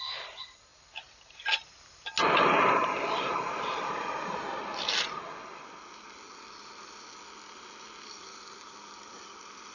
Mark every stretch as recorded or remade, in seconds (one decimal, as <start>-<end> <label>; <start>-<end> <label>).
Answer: 0.0-9.7 recorded